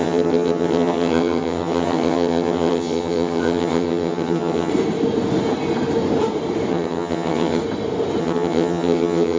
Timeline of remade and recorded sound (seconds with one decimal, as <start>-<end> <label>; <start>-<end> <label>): 0.0-4.7 remade; 4.7-6.7 recorded; 6.7-7.6 remade; 7.6-8.2 recorded; 8.2-9.4 remade